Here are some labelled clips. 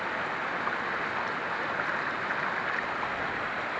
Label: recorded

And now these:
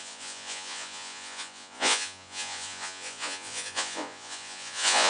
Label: remade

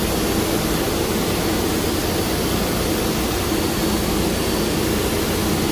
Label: recorded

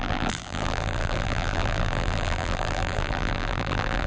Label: remade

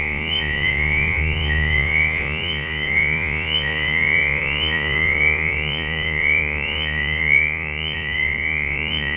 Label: remade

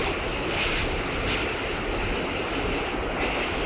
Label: recorded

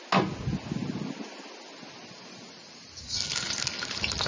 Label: recorded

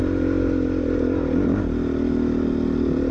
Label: recorded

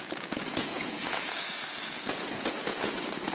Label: remade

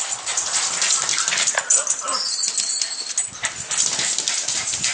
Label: recorded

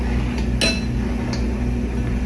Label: recorded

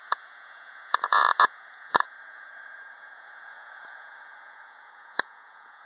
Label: remade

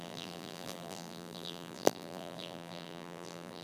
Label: remade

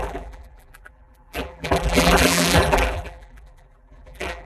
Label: remade